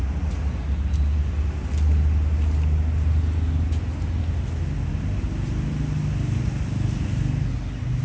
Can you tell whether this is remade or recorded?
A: recorded